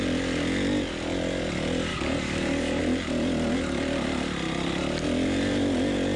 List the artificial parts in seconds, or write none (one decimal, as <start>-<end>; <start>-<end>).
1.9-2.8